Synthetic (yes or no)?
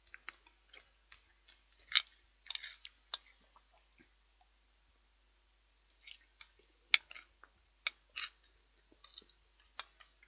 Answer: no